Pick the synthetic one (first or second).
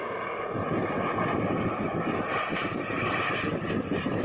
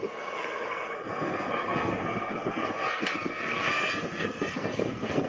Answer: second